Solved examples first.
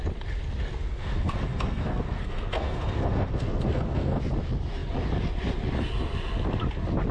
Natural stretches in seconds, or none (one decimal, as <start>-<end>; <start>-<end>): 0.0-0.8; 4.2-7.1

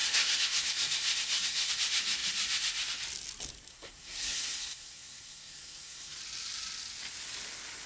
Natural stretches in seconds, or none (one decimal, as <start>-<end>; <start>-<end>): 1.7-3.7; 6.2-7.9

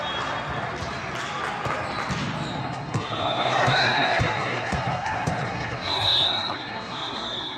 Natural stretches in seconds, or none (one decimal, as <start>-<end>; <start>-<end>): 0.0-2.6

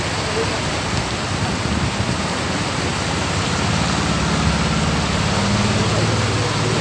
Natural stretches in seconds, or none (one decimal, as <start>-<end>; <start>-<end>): 0.0-6.8

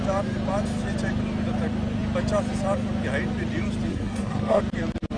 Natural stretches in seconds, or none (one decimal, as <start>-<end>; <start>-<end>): 0.0-3.9; 4.6-5.2

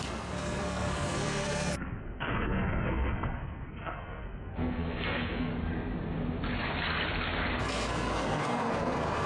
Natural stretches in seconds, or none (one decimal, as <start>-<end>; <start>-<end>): 5.5-7.6